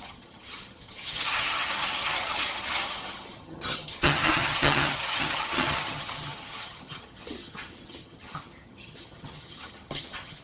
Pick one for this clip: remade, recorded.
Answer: remade